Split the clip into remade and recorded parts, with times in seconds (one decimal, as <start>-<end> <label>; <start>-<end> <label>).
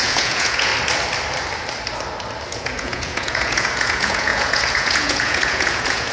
0.0-0.7 remade; 0.7-2.5 recorded; 2.5-6.1 remade